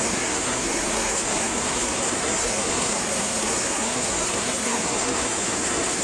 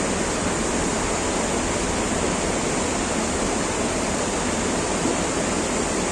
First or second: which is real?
second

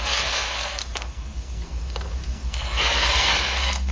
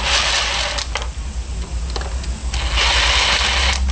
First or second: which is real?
second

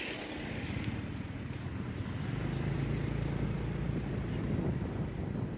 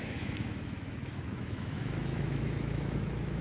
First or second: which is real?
first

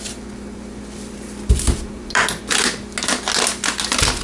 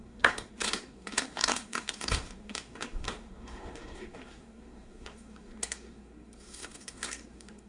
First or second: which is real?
first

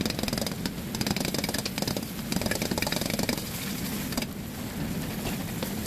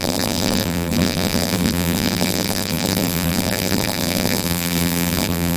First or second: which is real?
first